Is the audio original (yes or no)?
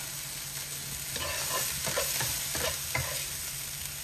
yes